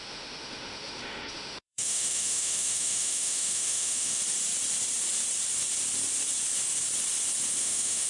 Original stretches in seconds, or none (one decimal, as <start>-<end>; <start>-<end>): 4.2-7.6